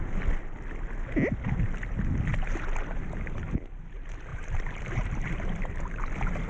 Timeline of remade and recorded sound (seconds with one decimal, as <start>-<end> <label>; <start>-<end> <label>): 0.0-4.3 recorded; 4.3-5.8 remade; 5.8-6.5 recorded